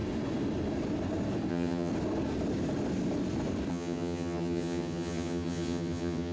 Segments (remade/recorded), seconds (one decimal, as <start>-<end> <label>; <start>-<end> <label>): 0.0-1.5 recorded; 1.5-1.9 remade; 1.9-3.7 recorded; 3.7-6.3 remade